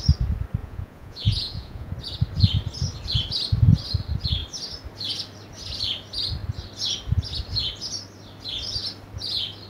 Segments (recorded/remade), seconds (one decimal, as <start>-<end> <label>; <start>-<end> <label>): 0.0-0.6 recorded; 0.6-1.9 remade; 1.9-9.7 recorded